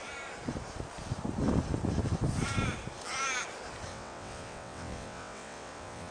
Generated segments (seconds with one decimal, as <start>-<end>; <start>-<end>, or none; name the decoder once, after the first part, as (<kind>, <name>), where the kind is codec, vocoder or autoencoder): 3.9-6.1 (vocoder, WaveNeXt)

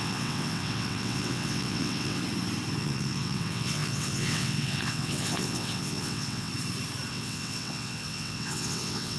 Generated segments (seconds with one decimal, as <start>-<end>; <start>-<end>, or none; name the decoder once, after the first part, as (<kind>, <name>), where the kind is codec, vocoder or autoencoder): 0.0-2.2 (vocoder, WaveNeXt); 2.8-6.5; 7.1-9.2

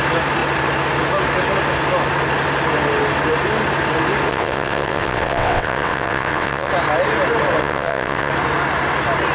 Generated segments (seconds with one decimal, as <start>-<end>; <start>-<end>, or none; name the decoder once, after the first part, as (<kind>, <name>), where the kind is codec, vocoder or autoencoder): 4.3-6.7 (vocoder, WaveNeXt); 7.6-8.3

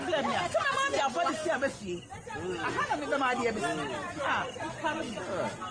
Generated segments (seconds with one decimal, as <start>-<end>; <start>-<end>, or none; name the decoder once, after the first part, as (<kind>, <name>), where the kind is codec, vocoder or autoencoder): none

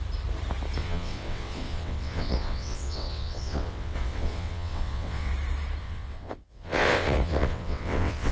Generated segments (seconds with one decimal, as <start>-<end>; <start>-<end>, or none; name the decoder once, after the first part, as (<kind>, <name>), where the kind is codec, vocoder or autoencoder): 0.8-5.3 (vocoder, WaveNeXt); 5.8-8.3

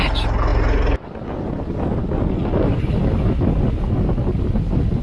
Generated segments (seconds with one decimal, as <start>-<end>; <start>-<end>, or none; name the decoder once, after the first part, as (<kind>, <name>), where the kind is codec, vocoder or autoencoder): none

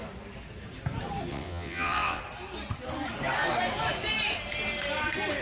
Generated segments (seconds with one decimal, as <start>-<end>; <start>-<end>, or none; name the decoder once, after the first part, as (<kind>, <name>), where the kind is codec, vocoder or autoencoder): 1.3-2.2 (vocoder, WaveNeXt)

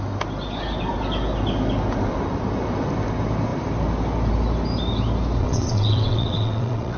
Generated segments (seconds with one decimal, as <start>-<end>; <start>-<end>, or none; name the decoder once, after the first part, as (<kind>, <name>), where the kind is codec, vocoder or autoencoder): 5.4-7.0 (vocoder, WaveNeXt)